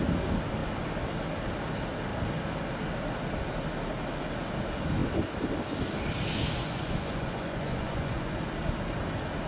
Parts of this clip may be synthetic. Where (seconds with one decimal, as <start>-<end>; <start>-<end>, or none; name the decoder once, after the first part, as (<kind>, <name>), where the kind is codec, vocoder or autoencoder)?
6.6-8.4 (vocoder, Vocos)